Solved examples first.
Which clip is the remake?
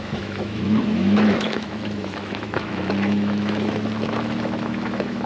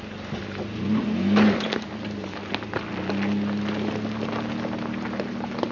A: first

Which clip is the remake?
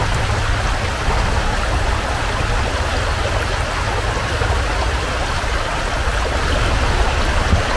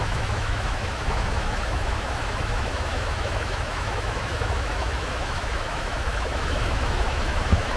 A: second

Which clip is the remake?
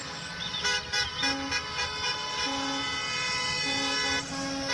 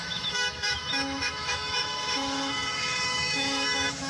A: second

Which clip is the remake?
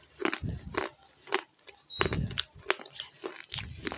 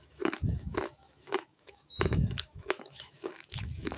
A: second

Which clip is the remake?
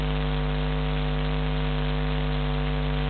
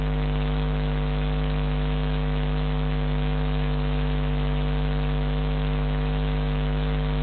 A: second